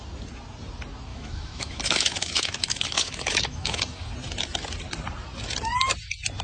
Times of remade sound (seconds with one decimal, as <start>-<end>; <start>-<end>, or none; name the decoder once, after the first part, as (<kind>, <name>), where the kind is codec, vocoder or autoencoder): 1.1-3.8 (autoencoder, DAC-VAE)